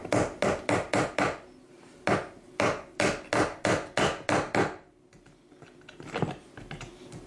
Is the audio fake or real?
real